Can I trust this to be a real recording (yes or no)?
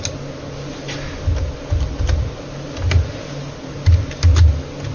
yes